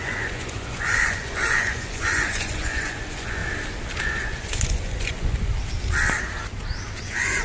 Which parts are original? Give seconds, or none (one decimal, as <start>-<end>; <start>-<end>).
3.4-4.0; 5.5-7.0